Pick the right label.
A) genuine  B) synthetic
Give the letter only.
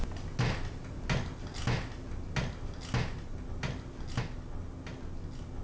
A